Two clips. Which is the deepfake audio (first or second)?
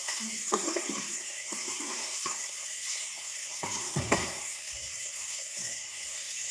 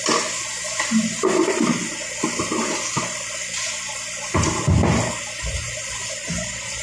first